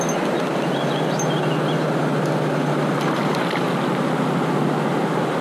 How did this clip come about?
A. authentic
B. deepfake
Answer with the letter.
A